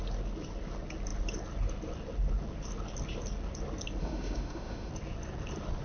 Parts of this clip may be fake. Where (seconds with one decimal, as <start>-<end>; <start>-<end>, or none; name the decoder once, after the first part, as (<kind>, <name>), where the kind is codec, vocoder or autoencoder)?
4.0-4.9 (autoencoder, DAC-VAE)